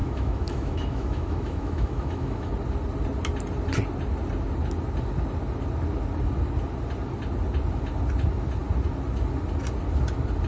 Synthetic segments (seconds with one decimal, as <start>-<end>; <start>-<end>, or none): 0.0-2.5